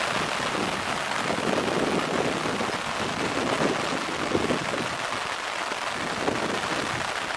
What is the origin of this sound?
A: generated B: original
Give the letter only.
B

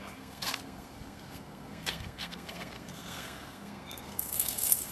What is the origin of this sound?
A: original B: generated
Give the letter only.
B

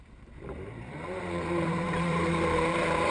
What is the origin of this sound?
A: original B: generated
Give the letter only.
B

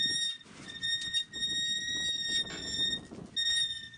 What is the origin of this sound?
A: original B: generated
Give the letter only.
A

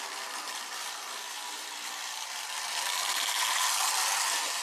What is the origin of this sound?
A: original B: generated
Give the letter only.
A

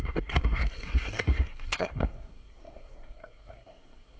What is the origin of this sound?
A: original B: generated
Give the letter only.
B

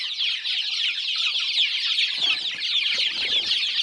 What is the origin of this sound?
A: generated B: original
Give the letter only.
B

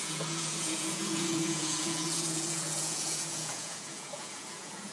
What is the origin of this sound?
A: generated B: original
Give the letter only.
A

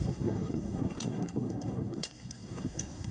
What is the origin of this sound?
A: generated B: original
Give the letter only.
A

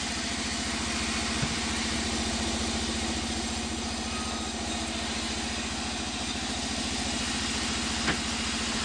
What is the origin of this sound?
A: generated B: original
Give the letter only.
B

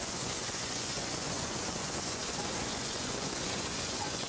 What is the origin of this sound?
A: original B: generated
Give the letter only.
B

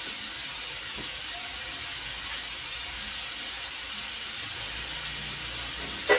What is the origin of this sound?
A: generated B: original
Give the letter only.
B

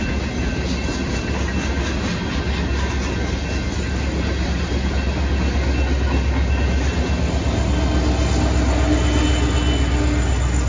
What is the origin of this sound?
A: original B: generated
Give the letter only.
A